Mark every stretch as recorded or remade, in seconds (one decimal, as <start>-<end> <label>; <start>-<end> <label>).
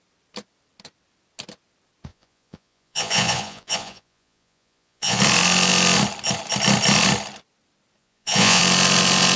0.0-2.1 recorded; 2.1-5.2 remade; 5.2-8.0 recorded; 8.0-8.6 remade; 8.6-9.4 recorded